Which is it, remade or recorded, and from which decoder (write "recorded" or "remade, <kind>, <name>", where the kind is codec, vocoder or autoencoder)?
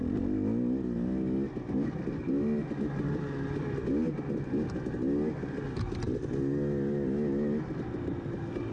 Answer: recorded